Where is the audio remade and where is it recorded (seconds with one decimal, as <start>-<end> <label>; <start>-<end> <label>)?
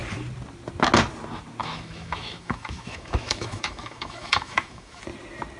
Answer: 0.0-1.6 recorded; 1.6-5.0 remade; 5.0-5.6 recorded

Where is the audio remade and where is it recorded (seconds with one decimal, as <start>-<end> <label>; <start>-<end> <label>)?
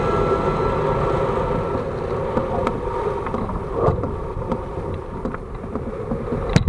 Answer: 0.0-2.4 recorded; 2.4-5.1 remade; 5.1-6.7 recorded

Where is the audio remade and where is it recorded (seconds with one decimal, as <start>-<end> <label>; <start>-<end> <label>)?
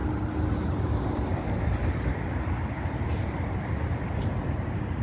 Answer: 0.0-5.0 recorded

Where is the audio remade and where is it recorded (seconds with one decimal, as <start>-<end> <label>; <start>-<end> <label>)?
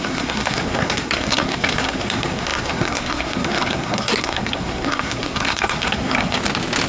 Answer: 0.0-6.4 remade; 6.4-6.9 recorded